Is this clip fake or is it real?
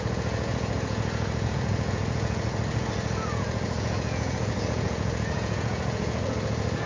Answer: fake